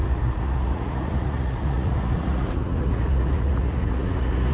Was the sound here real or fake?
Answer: fake